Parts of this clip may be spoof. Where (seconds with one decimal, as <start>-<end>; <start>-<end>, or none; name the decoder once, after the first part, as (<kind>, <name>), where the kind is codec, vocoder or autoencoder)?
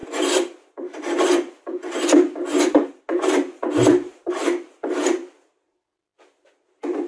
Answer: none